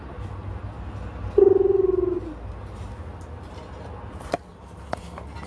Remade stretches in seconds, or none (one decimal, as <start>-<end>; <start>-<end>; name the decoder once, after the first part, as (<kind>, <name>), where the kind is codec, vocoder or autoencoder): none